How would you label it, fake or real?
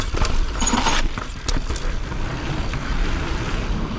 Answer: real